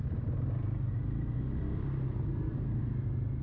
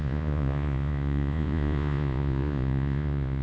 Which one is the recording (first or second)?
first